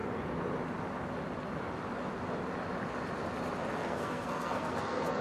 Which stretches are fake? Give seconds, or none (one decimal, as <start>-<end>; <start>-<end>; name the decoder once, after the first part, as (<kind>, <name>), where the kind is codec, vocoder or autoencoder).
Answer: 3.8-5.2 (codec, SNAC)